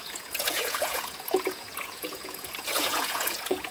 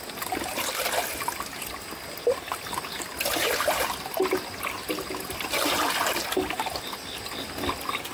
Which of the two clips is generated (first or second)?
first